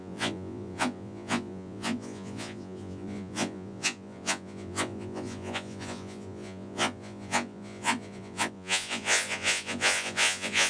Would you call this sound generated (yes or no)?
yes